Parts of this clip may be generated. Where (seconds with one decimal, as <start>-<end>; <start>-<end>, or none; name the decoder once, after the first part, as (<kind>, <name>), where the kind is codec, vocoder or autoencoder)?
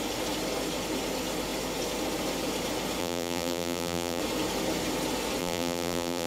3.0-4.2 (vocoder, BigVGAN v2); 5.4-6.3